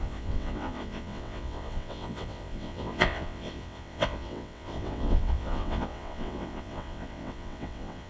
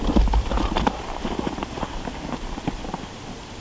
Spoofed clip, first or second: first